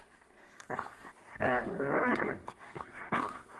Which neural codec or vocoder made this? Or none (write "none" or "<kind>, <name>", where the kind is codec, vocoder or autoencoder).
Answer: codec, SNAC